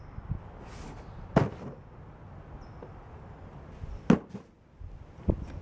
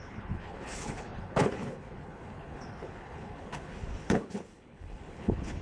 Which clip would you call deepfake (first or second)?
second